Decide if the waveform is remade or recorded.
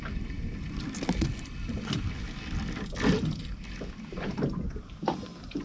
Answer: recorded